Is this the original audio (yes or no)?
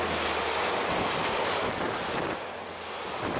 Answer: yes